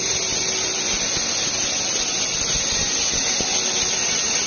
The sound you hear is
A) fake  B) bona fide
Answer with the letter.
B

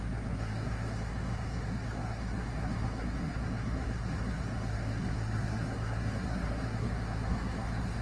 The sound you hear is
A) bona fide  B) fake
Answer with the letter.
B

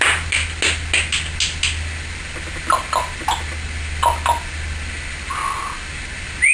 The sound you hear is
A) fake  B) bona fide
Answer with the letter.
B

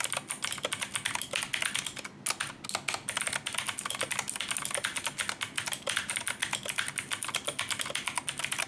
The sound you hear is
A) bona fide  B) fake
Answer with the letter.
A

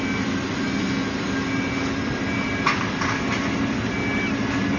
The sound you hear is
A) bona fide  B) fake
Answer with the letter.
A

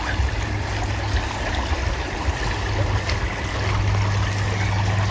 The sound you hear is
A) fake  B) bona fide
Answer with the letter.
B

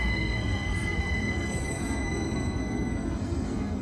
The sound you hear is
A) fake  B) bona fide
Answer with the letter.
A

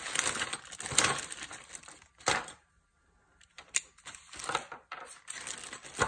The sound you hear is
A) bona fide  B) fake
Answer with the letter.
A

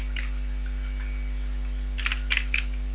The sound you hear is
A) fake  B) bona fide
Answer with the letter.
B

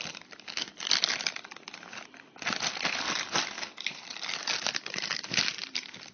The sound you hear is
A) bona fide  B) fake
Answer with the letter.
A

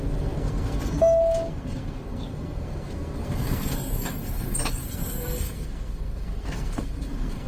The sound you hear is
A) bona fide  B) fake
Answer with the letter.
B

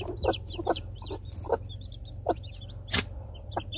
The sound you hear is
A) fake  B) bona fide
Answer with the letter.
B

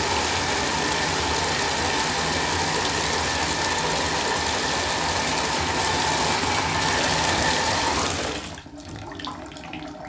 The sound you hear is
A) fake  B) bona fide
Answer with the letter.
B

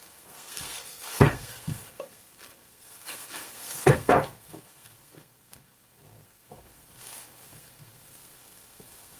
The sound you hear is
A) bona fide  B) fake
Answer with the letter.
B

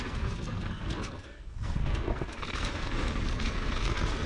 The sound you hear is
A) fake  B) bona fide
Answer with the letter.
A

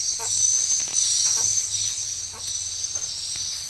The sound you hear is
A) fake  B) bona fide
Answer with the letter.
B